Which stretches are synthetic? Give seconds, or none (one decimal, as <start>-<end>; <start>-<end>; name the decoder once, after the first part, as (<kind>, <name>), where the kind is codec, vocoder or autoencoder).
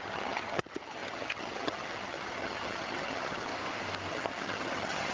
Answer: 0.0-3.5 (vocoder, HiFi-GAN); 4.1-5.1